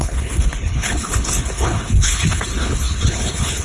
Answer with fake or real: fake